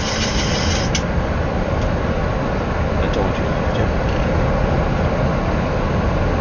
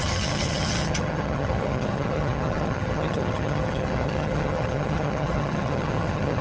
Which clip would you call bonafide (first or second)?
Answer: first